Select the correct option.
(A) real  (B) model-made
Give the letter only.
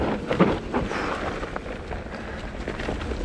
A